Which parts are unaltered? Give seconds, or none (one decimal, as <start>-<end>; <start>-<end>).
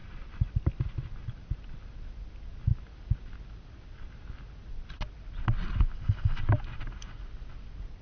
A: 0.0-8.0